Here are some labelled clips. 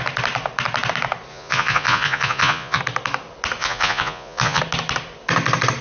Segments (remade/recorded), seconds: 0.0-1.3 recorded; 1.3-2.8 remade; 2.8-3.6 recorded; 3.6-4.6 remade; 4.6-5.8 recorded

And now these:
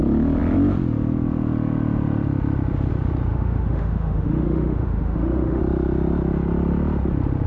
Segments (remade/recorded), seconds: 0.0-3.3 recorded; 3.3-5.6 remade; 5.6-7.5 recorded